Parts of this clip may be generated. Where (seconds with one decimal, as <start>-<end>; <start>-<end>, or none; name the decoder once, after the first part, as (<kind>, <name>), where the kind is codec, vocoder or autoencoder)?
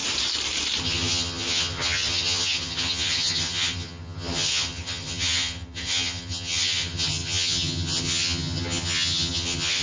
0.8-9.8 (vocoder, HiFi-GAN)